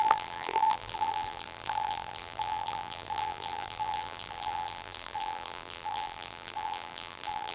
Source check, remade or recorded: remade